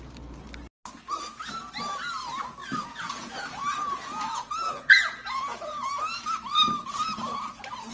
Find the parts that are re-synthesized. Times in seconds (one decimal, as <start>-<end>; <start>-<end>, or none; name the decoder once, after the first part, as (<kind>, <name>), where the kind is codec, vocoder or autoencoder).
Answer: 2.6-5.9 (vocoder, Vocos)